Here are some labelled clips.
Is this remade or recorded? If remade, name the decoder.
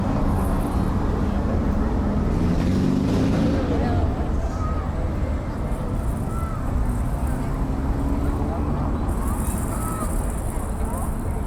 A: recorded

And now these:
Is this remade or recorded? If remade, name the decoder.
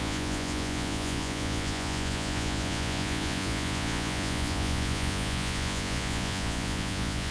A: remade, vocoder, Vocos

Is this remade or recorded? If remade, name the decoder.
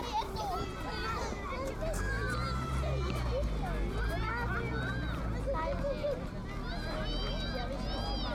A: recorded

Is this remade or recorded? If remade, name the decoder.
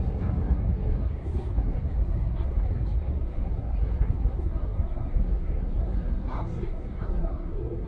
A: remade, codec, SNAC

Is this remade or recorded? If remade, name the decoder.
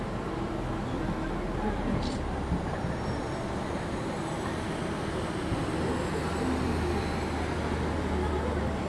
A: recorded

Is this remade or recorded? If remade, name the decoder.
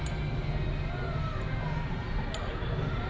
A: recorded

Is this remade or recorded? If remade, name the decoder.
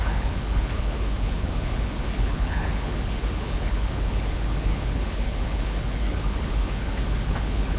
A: remade, codec, HILCodec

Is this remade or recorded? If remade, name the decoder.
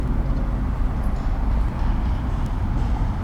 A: recorded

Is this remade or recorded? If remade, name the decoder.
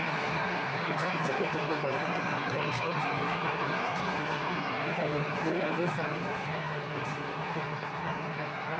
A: remade, codec, SNAC